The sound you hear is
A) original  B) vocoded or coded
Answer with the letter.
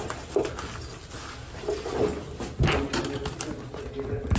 A